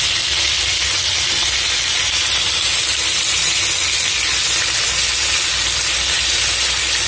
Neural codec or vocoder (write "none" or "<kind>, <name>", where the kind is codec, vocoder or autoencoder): none